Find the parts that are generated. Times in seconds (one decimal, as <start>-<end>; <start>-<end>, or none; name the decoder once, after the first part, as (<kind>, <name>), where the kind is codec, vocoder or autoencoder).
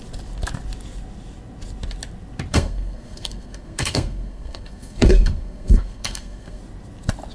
2.5-6.6 (codec, SNAC)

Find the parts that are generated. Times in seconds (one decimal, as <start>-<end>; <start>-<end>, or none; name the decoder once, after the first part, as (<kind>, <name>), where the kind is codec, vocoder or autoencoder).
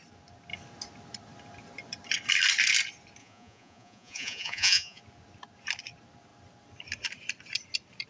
3.2-5.0 (vocoder, Vocos)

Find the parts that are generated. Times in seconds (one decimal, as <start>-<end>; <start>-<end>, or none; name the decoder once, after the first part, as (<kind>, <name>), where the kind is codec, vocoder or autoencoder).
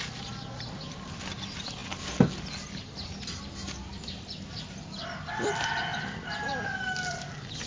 none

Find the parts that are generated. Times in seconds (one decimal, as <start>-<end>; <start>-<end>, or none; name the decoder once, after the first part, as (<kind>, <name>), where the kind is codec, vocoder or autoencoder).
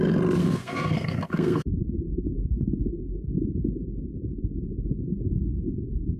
0.4-3.3 (codec, SNAC); 5.1-6.2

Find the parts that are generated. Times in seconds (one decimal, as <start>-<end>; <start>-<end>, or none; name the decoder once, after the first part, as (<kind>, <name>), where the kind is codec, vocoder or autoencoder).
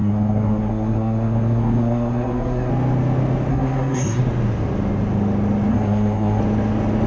0.0-2.7 (codec, SNAC); 3.5-4.2; 5.7-6.4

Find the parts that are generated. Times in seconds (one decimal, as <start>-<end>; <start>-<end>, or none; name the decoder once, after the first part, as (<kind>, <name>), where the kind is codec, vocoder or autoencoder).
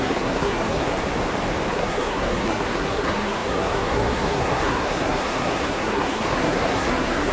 0.0-1.0 (codec, SNAC); 1.7-7.3